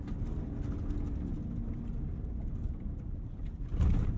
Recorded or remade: recorded